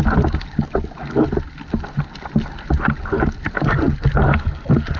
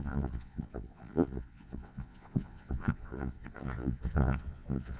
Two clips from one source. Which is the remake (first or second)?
second